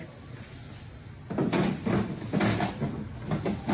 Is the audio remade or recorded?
recorded